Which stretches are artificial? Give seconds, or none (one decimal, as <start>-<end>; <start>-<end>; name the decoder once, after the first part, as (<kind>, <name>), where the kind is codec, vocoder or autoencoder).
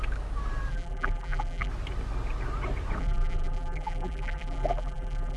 0.7-1.7 (vocoder, BigVGAN v2); 3.0-5.4